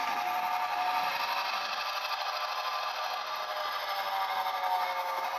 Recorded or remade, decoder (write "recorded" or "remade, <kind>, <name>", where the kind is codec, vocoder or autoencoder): recorded